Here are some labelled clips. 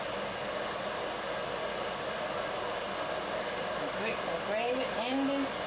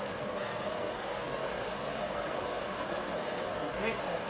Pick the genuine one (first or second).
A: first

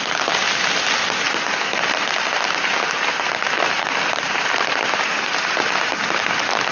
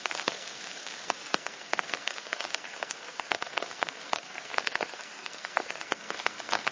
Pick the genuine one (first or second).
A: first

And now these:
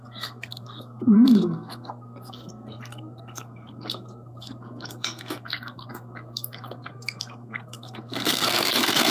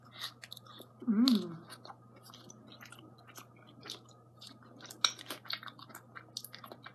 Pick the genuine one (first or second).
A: second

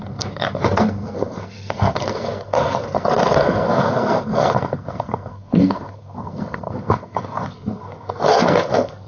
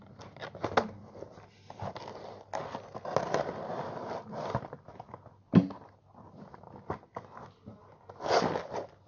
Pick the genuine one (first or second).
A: second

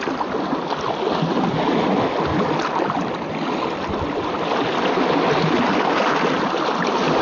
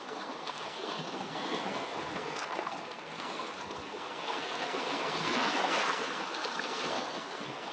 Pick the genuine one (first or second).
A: first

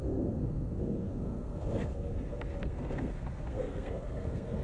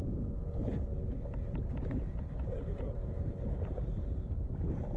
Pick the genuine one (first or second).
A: second